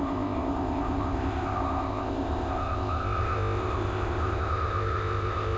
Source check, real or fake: fake